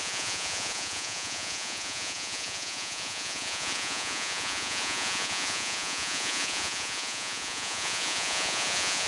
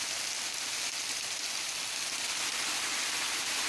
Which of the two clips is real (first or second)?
second